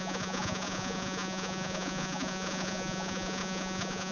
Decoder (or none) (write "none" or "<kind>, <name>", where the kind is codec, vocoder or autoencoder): vocoder, Vocos